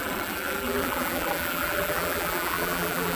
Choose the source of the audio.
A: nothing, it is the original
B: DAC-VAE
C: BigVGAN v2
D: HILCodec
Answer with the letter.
C